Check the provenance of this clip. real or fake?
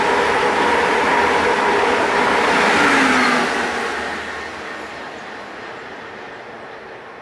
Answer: real